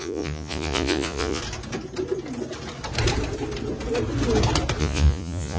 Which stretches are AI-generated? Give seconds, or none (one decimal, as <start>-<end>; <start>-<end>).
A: 0.0-1.4; 4.8-5.6